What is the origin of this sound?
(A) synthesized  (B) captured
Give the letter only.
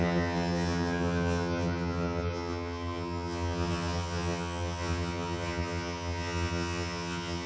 A